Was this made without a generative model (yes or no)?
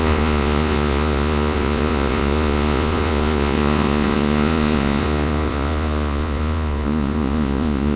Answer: no